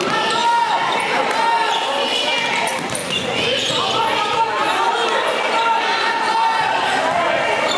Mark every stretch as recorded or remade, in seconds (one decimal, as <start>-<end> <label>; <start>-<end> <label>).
0.0-3.0 recorded; 3.0-3.7 remade; 3.7-7.8 recorded